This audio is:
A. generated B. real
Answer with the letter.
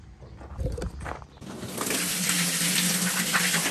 B